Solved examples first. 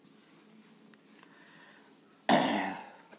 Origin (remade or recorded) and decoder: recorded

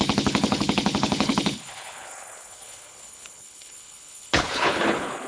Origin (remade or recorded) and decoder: remade, codec, HILCodec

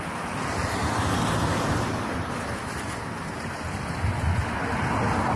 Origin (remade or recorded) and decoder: recorded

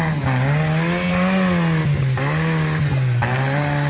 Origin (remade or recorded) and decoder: recorded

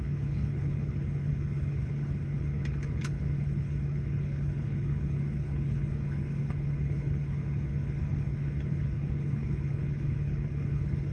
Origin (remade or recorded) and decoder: remade, codec, HILCodec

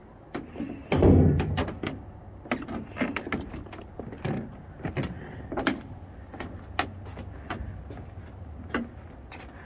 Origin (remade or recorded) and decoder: recorded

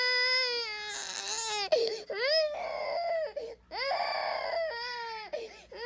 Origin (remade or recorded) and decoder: recorded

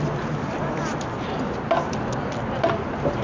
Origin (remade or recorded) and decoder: recorded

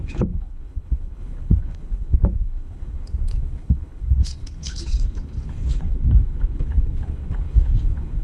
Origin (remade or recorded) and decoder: remade, codec, HILCodec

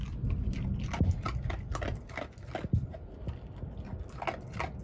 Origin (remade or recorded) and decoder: recorded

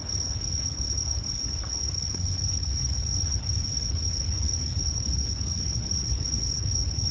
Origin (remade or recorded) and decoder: remade, codec, HILCodec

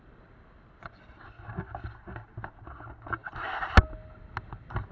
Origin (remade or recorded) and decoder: recorded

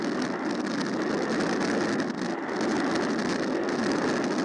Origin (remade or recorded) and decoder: recorded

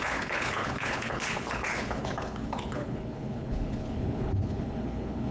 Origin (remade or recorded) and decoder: remade, codec, HILCodec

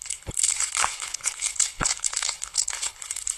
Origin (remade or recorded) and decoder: remade, codec, HILCodec